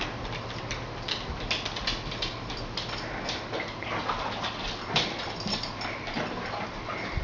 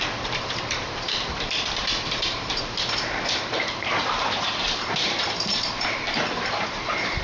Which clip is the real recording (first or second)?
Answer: first